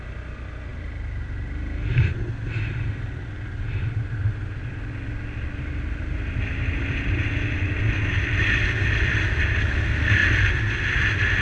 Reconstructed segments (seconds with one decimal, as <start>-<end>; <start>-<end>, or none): none